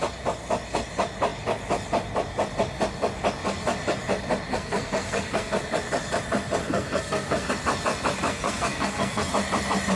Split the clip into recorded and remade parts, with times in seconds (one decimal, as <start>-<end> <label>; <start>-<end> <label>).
0.0-4.5 recorded; 4.5-5.5 remade; 5.5-6.6 recorded; 6.6-7.5 remade; 7.5-8.3 recorded; 8.3-9.3 remade; 9.3-10.0 recorded